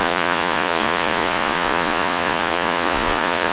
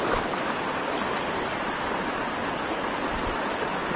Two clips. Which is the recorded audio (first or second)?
second